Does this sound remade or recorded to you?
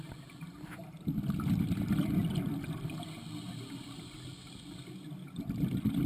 recorded